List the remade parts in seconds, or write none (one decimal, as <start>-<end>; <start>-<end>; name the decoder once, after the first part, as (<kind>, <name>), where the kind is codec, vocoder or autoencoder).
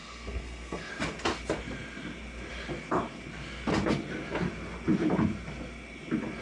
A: 0.0-0.9 (codec, SNAC)